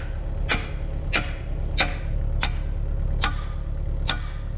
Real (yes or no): yes